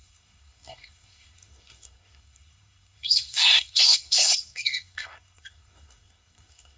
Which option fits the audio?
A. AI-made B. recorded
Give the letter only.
A